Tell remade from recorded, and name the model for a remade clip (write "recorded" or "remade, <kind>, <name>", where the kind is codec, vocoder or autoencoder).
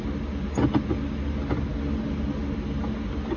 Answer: recorded